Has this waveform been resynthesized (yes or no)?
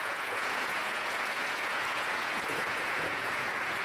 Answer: yes